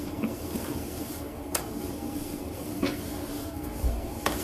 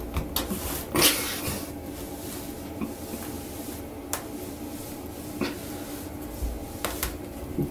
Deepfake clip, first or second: first